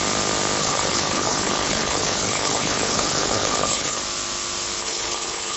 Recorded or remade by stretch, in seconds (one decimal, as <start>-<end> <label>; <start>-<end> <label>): 0.0-0.6 recorded; 0.6-4.0 remade; 4.0-4.8 recorded; 4.8-5.6 remade